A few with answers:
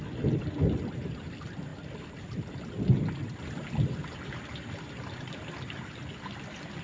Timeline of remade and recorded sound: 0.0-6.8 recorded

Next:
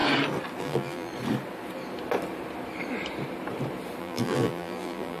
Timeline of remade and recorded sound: 0.0-0.6 recorded; 0.6-1.1 remade; 1.1-4.0 recorded; 4.0-5.2 remade

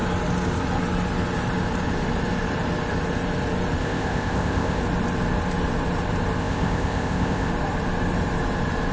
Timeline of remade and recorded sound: 0.0-3.8 recorded; 3.8-4.8 remade; 4.8-6.4 recorded; 6.4-7.5 remade; 7.5-8.9 recorded

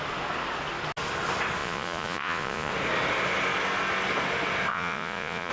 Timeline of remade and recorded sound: 0.0-1.6 recorded; 1.6-2.7 remade; 2.7-4.7 recorded; 4.7-5.5 remade

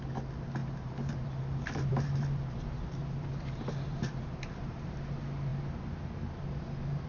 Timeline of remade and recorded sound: 0.0-0.6 recorded; 0.6-4.9 remade; 4.9-7.1 recorded

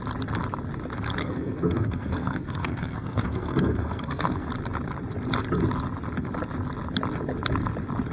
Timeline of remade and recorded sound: 0.0-1.2 recorded; 1.2-4.5 remade; 4.5-8.1 recorded